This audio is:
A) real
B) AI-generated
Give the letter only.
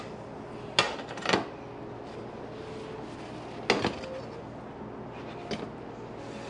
A